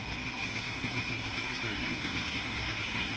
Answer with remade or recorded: remade